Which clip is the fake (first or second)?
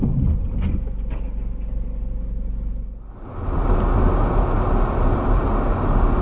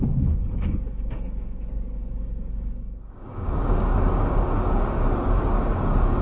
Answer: second